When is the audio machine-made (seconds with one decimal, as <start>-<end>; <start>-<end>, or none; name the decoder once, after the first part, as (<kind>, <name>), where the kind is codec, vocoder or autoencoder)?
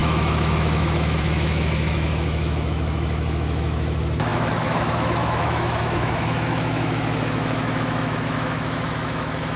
0.0-9.6 (autoencoder, DAC-VAE)